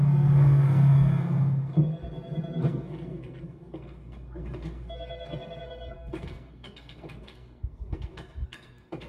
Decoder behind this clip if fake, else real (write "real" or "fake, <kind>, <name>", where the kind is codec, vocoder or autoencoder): fake, codec, SNAC